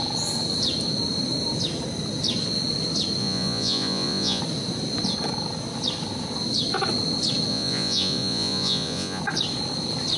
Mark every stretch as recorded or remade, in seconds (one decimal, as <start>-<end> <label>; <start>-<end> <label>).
0.0-3.2 recorded; 3.2-4.4 remade; 4.4-7.5 recorded; 7.5-9.2 remade; 9.2-10.2 recorded